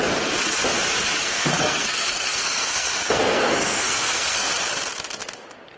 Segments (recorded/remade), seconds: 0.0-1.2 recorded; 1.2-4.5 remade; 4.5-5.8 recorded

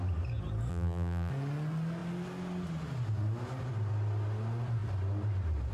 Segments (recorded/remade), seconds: 0.0-0.7 recorded; 0.7-1.3 remade; 1.3-5.7 recorded

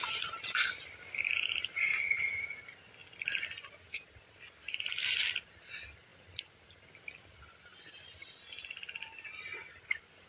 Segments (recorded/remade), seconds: 0.0-10.3 recorded

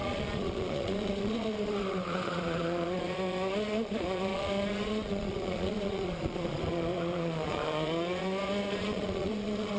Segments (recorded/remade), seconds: 0.0-9.8 remade

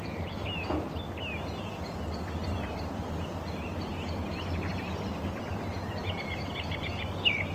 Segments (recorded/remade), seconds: 0.0-6.0 recorded; 6.0-6.9 remade; 6.9-7.5 recorded